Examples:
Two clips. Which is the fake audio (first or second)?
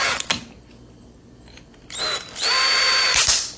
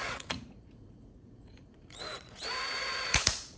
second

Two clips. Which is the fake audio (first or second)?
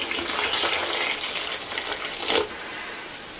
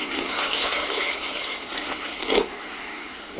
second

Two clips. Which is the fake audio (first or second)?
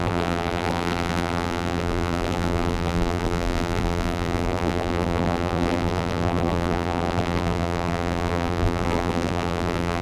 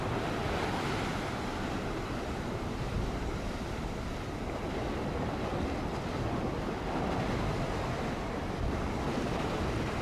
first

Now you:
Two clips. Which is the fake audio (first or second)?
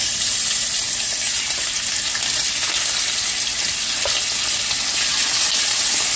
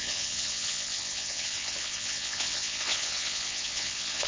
second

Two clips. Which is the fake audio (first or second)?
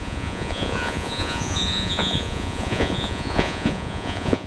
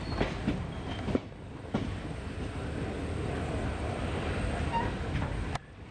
first